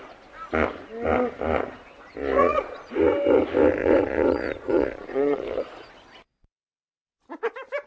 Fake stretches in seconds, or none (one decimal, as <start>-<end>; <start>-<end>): 2.4-2.9; 3.8-5.7